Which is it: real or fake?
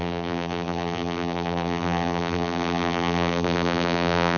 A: fake